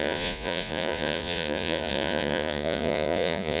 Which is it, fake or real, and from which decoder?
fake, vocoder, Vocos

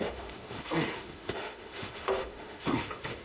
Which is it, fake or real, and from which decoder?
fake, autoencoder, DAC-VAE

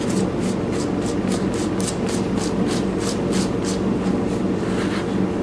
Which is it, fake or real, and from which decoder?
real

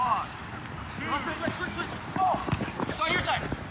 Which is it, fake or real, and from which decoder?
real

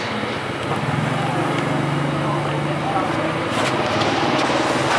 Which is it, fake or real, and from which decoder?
real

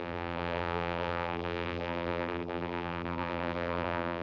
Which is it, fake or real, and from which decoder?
fake, vocoder, BigVGAN v2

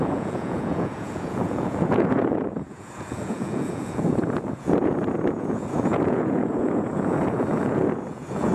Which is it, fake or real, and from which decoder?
fake, vocoder, Vocos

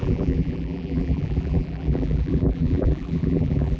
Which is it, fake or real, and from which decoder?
fake, vocoder, BigVGAN v2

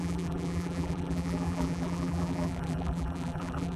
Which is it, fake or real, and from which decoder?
fake, vocoder, BigVGAN v2